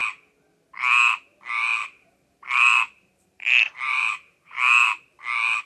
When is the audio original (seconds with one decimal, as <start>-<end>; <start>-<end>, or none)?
0.0-1.8